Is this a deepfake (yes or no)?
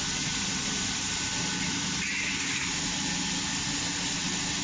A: no